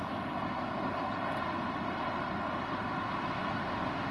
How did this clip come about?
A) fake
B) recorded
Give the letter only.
B